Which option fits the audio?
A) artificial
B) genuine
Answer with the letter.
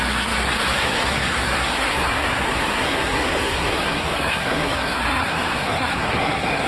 A